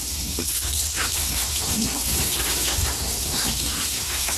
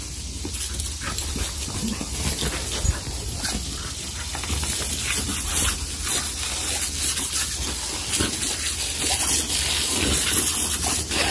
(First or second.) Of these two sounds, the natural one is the second